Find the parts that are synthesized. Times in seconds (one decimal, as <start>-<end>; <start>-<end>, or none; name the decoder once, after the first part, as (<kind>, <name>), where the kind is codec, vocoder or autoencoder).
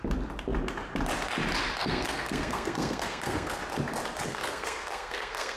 1.8-3.6 (codec, SNAC); 4.3-5.6